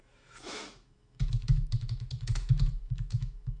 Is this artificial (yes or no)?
yes